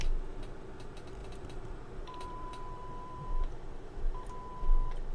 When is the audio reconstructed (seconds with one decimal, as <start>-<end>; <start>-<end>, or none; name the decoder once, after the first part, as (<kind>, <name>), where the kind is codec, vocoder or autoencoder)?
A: 1.2-4.3 (vocoder, BigVGAN v2)